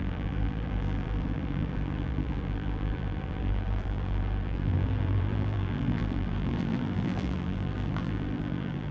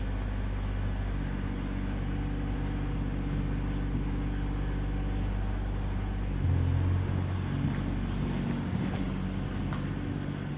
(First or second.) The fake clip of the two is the first